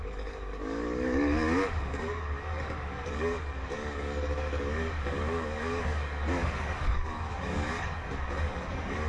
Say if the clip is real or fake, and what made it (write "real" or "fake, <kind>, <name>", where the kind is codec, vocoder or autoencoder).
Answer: fake, codec, DAC